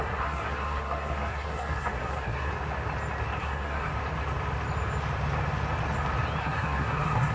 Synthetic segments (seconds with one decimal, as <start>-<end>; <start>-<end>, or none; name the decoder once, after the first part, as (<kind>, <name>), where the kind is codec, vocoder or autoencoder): 0.0-2.5 (codec, SNAC); 3.4-3.9; 6.4-7.3